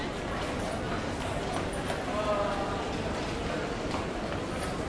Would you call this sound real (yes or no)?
yes